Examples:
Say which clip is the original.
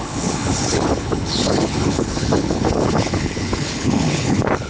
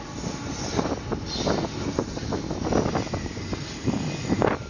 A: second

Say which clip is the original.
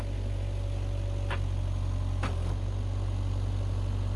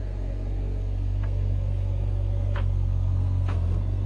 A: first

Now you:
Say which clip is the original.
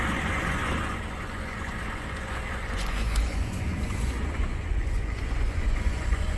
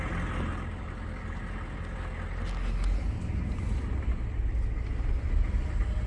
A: second